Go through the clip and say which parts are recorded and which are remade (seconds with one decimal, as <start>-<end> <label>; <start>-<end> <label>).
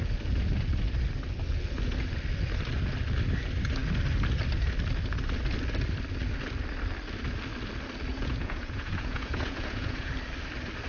0.0-8.1 recorded; 8.1-10.1 remade; 10.1-10.9 recorded